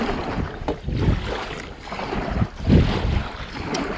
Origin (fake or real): real